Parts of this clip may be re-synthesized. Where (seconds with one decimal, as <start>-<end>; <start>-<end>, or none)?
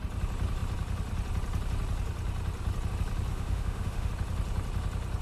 3.3-4.1